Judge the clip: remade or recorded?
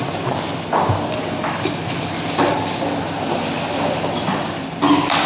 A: recorded